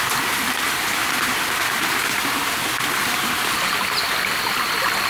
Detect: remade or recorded recorded